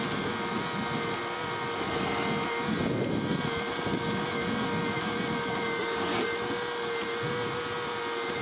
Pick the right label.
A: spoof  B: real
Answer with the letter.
B